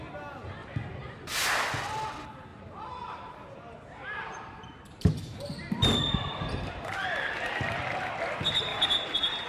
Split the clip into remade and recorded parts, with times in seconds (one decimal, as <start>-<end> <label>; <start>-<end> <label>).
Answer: 0.0-0.6 recorded; 0.6-1.6 remade; 1.6-2.5 recorded; 2.5-7.5 remade; 7.5-8.7 recorded; 8.7-9.5 remade